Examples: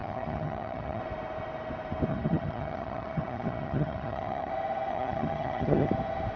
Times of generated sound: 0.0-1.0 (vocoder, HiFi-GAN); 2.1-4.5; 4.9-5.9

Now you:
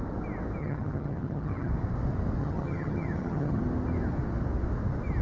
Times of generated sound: 0.6-1.7 (vocoder, HiFi-GAN); 2.4-3.6

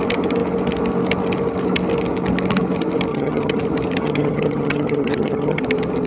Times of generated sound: 3.1-3.6 (vocoder, HiFi-GAN); 4.0-5.6

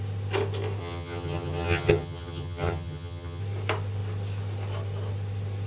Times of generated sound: 0.8-3.4 (vocoder, HiFi-GAN)